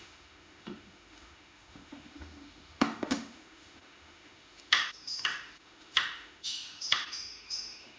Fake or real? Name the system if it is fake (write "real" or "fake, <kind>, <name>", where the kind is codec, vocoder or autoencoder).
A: fake, autoencoder, DAC-VAE